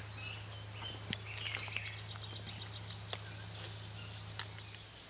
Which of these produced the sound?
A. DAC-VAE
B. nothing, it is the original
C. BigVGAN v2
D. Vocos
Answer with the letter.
B